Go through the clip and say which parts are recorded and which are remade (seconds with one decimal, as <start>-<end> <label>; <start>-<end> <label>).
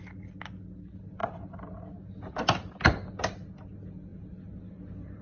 0.0-1.2 recorded; 1.2-1.8 remade; 1.8-5.2 recorded